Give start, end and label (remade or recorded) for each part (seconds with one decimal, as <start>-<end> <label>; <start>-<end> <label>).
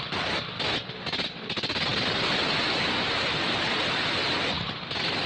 0.0-5.3 recorded